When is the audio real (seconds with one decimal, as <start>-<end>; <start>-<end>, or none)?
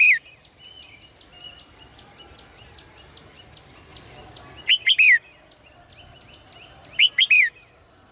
0.0-8.1